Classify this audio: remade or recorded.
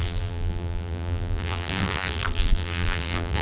remade